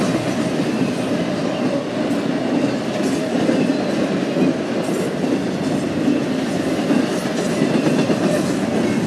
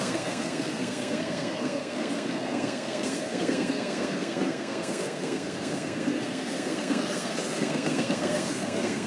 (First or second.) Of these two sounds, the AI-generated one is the second